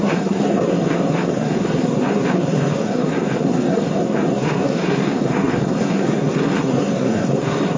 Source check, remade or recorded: remade